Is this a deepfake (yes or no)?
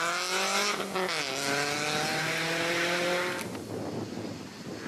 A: no